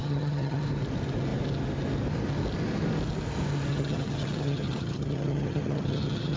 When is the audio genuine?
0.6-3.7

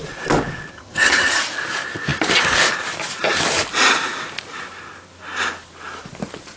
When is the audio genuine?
0.0-0.7; 1.4-6.6

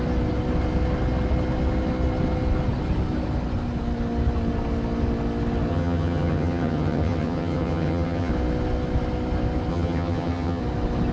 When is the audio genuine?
0.0-5.7; 8.3-9.7; 10.6-11.1

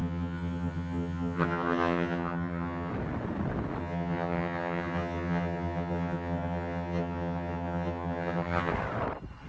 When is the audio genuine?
2.9-3.8; 8.7-9.5

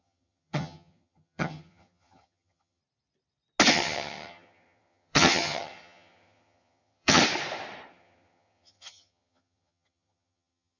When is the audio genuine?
2.8-3.7; 7.2-7.9

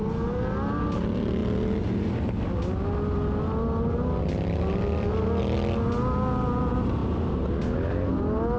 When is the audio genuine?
0.0-8.6

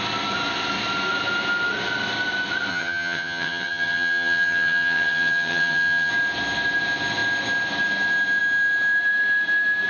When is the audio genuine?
0.0-2.7; 6.1-9.9

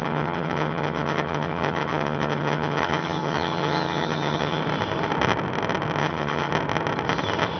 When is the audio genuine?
4.6-6.0; 6.5-7.6